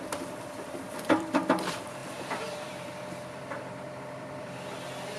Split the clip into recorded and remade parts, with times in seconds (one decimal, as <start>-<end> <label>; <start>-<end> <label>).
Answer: 0.0-5.2 remade